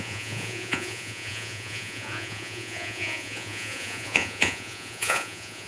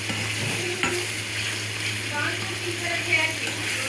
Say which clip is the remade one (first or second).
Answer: first